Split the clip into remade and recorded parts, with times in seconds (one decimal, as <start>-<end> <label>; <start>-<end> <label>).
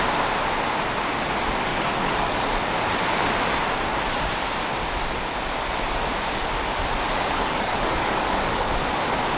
0.0-1.7 recorded; 1.7-2.5 remade; 2.5-7.2 recorded; 7.2-8.7 remade; 8.7-9.4 recorded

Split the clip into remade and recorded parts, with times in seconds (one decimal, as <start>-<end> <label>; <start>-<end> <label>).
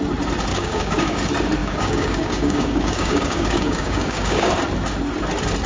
0.0-0.5 recorded; 0.5-1.2 remade; 1.2-1.6 recorded; 1.6-4.5 remade; 4.5-5.7 recorded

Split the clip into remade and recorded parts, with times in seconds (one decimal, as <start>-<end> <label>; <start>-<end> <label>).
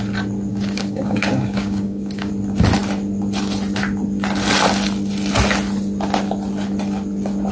0.0-0.5 recorded; 0.5-2.3 remade; 2.3-7.5 recorded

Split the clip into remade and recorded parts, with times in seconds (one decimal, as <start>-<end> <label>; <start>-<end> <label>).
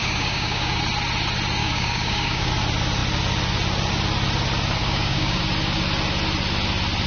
0.0-0.8 remade; 0.8-1.6 recorded; 1.6-2.5 remade; 2.5-4.8 recorded; 4.8-5.4 remade; 5.4-7.1 recorded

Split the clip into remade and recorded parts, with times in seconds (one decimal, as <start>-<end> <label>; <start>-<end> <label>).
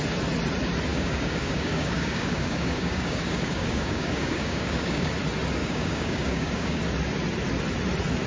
0.0-0.9 recorded; 0.9-5.1 remade; 5.1-5.6 recorded; 5.6-6.8 remade; 6.8-8.3 recorded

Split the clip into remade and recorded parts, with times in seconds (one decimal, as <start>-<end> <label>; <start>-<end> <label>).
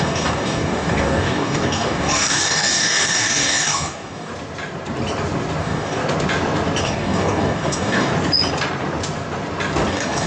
0.0-4.3 remade; 4.3-5.6 recorded; 5.6-6.0 remade; 6.0-6.8 recorded; 6.8-8.1 remade; 8.1-9.9 recorded; 9.9-10.3 remade